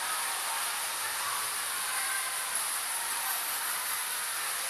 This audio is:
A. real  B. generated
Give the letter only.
A